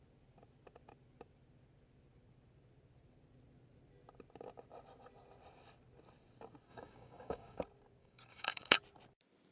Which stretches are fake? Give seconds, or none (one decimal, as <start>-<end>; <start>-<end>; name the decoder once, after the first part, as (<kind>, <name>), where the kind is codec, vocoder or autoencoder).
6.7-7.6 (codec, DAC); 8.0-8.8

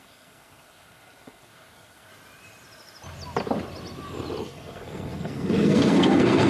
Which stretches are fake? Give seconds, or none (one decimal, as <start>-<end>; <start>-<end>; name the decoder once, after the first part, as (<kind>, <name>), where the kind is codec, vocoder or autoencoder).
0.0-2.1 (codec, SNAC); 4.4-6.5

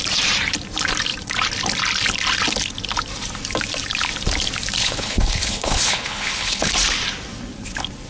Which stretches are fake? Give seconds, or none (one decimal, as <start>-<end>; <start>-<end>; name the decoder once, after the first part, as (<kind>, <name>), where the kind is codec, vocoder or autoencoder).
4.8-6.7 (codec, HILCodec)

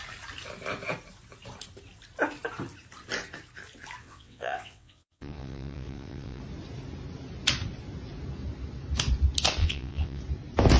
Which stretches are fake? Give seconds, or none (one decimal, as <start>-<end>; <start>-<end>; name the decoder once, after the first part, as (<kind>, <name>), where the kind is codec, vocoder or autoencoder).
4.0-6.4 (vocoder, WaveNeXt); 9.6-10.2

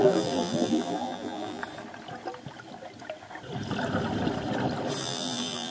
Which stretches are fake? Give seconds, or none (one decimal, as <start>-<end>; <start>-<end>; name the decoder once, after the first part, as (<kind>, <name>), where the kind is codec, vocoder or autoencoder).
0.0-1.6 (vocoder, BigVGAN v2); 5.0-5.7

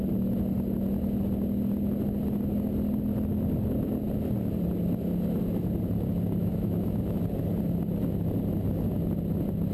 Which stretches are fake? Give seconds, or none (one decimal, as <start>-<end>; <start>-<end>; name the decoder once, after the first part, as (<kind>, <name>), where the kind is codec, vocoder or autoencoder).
6.4-7.2 (autoencoder, DAC-VAE)

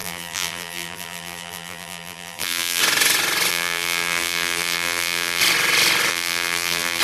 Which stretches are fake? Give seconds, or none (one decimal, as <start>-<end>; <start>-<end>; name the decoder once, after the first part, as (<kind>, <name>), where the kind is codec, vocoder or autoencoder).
0.0-2.8 (vocoder, BigVGAN v2); 3.5-5.4; 6.1-7.0

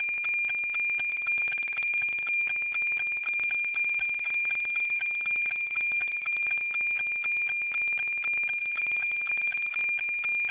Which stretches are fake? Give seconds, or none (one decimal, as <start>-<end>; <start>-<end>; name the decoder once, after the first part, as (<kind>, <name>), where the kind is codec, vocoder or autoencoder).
1.1-2.4 (codec, DAC); 3.2-6.6; 8.6-9.7